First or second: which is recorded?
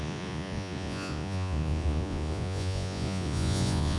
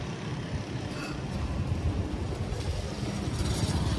second